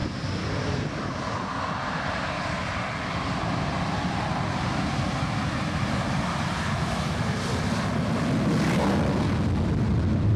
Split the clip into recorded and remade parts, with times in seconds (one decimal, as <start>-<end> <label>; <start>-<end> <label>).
0.0-10.4 recorded